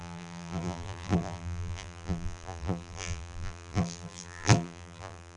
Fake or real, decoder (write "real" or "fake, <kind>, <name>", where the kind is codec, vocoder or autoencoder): fake, vocoder, BigVGAN v2